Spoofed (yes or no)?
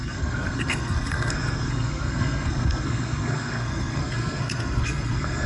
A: yes